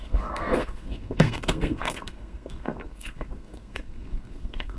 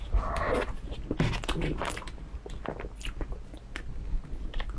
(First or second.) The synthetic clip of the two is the first